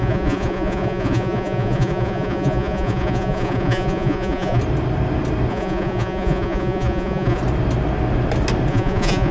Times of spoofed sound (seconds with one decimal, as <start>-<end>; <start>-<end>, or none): 0.0-4.6; 5.5-7.4; 8.7-9.3